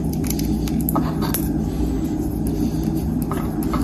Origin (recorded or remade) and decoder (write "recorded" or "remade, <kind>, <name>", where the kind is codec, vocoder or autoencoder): recorded